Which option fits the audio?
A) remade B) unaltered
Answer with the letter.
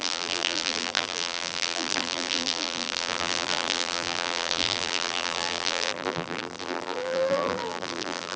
A